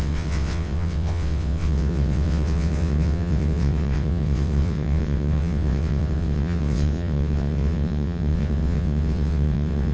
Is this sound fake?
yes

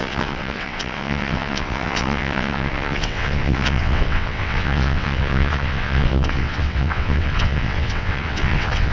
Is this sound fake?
yes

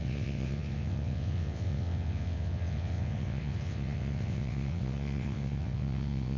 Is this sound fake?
yes